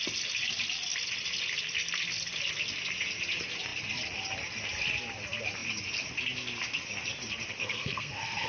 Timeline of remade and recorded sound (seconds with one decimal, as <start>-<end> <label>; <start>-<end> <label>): 0.0-7.6 recorded; 7.6-8.5 remade